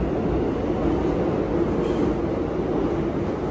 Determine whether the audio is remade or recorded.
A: recorded